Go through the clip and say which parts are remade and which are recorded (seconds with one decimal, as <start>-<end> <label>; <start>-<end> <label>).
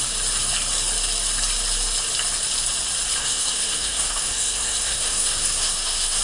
0.0-3.2 recorded; 3.2-6.2 remade